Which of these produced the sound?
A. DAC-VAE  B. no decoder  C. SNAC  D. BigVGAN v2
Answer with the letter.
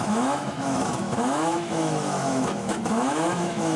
A